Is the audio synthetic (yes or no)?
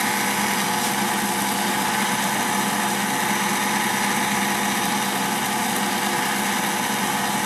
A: no